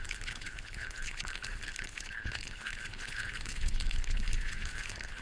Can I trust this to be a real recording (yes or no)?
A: no